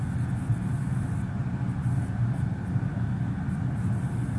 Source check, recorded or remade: recorded